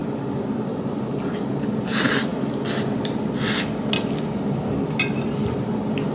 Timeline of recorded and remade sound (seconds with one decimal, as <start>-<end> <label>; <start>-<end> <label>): 0.0-2.3 remade; 2.3-6.1 recorded